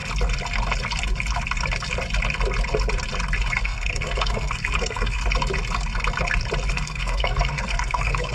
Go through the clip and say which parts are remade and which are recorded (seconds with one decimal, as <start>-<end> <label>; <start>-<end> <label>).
0.0-3.6 recorded; 3.6-5.2 remade; 5.2-6.7 recorded; 6.7-8.3 remade